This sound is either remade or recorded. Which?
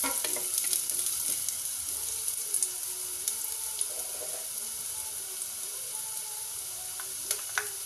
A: recorded